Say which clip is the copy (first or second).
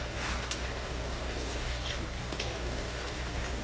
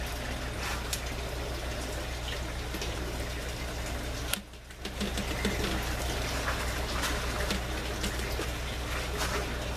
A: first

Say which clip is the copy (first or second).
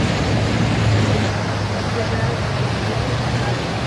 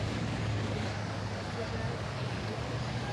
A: second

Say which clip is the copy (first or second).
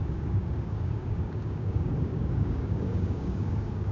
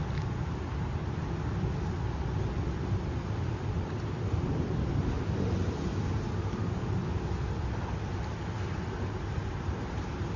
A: first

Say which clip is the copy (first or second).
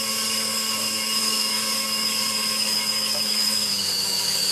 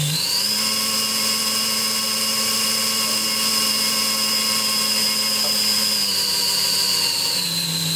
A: first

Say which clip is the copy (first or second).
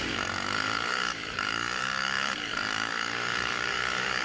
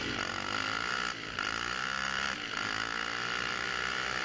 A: first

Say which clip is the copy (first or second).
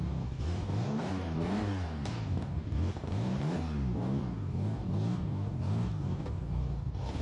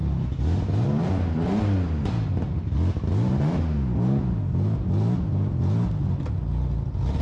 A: first